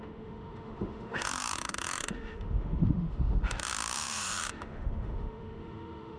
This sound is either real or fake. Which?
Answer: fake